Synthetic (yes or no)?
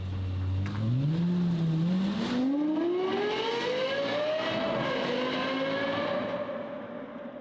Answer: no